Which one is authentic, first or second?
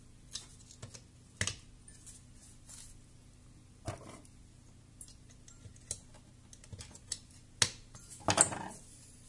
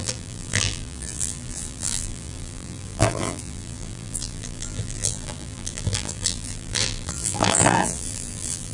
first